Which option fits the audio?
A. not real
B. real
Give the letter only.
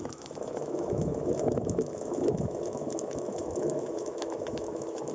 A